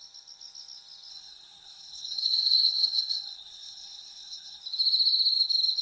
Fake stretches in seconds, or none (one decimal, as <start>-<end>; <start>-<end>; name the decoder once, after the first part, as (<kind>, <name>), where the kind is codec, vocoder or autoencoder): 1.1-4.6 (codec, SNAC)